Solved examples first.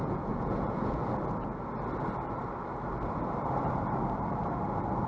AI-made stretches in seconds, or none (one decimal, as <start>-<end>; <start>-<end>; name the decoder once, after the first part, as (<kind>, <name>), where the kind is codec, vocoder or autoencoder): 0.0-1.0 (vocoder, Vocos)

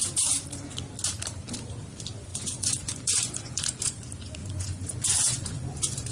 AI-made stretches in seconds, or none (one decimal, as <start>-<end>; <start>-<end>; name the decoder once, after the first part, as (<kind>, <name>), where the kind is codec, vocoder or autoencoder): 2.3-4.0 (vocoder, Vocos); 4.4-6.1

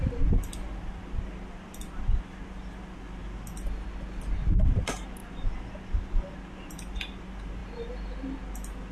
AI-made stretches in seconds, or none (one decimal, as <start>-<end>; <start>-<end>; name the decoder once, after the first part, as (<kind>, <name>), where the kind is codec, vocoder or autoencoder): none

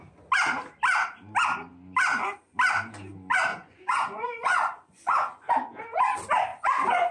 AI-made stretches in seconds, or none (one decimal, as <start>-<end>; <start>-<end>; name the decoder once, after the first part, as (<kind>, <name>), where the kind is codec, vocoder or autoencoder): 3.5-5.5 (vocoder, Vocos); 6.5-7.1